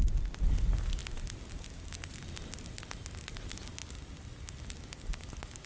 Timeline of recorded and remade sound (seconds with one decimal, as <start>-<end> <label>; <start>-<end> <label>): 0.0-5.7 recorded